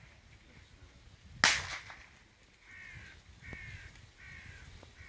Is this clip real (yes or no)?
yes